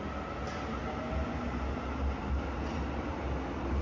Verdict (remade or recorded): recorded